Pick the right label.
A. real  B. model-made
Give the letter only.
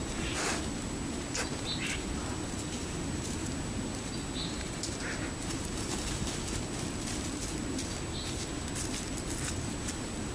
A